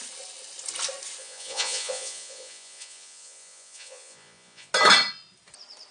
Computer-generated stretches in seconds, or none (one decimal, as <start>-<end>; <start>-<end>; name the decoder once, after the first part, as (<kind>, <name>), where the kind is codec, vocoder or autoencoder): 1.2-4.7 (vocoder, Vocos)